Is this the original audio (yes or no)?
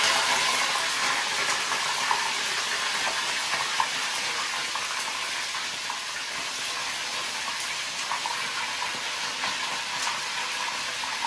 yes